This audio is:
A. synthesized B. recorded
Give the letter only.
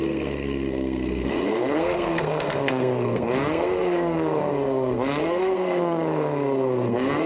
A